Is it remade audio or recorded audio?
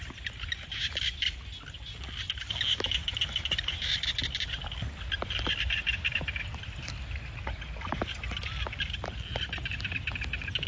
recorded